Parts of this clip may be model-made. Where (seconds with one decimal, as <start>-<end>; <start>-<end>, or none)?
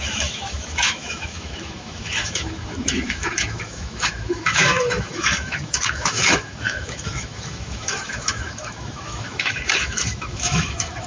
0.0-11.1